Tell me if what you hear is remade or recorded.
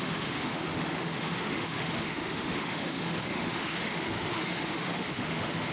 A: remade